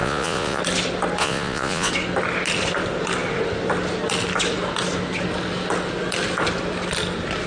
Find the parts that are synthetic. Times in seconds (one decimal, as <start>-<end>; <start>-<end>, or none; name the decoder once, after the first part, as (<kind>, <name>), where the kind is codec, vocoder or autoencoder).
0.0-0.6 (vocoder, Vocos); 1.2-1.9